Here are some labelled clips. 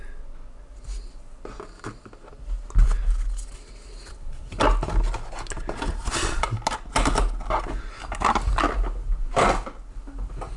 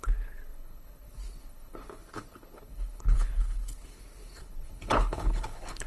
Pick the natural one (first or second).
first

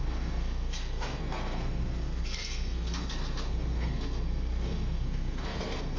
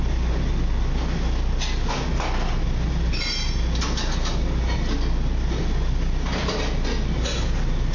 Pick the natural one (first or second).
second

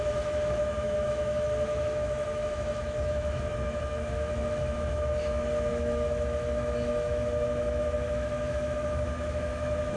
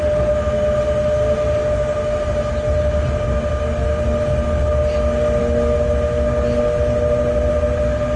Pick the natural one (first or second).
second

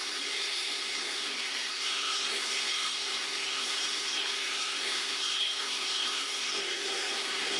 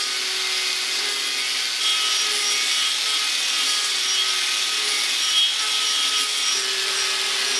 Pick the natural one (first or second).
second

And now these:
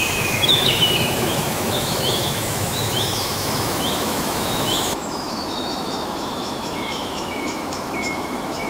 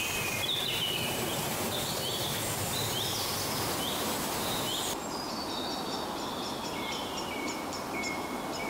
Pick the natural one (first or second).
second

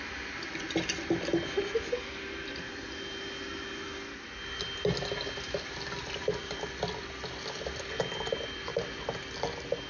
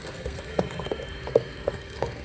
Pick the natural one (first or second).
first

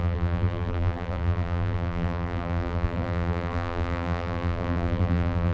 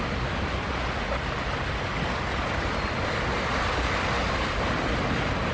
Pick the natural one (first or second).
second